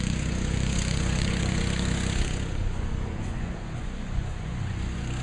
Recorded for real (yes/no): no